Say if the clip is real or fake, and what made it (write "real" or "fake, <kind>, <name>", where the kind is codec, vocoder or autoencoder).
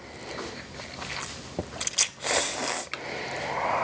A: real